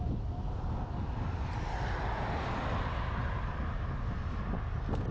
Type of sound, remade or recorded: recorded